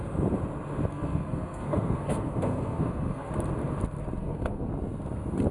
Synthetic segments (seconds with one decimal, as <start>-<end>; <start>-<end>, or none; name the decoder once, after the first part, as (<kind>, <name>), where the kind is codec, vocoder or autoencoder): 0.9-3.3 (codec, SNAC); 4.2-4.7